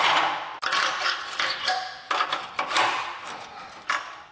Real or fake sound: real